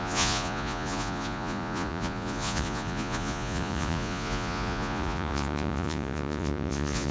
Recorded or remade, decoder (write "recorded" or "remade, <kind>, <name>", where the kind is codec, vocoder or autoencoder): remade, vocoder, Vocos